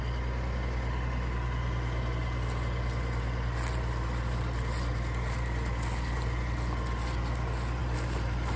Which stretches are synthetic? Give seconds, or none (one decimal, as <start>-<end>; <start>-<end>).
none

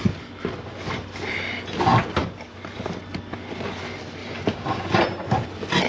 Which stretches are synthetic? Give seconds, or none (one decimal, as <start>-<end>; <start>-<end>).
4.2-4.9

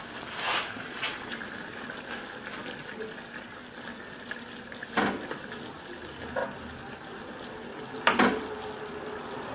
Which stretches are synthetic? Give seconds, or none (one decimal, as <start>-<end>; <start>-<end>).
6.4-7.2